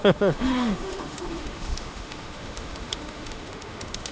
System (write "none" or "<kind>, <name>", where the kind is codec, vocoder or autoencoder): autoencoder, DAC-VAE